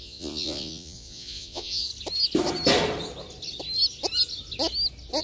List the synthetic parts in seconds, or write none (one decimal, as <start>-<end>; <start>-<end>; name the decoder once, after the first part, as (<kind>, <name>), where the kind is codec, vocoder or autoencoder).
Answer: 0.0-1.9 (vocoder, Vocos)